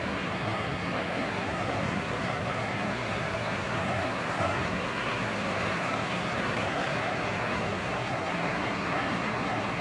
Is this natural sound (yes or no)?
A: no